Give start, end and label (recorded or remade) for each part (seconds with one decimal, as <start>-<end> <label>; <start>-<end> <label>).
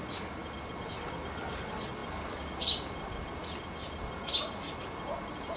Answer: 0.0-5.6 recorded